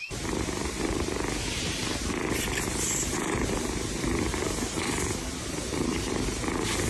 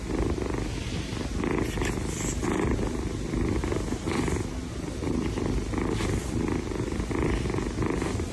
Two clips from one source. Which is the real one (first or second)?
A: second